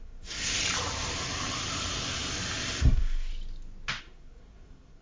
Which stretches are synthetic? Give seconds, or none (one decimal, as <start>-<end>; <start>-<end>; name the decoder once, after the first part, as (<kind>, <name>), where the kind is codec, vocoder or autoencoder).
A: 0.0-0.6 (codec, SNAC); 2.8-3.3; 4.0-5.0